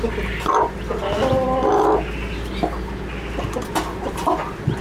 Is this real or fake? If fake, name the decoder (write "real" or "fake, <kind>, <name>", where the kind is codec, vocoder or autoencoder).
real